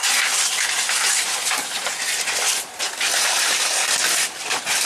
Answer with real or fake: fake